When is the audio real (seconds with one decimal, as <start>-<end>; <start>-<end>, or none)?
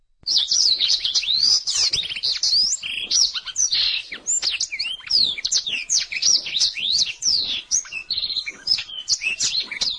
1.8-3.0; 4.0-5.1